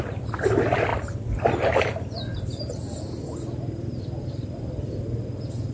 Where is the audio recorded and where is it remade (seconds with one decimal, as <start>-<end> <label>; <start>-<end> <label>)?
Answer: 0.0-5.7 recorded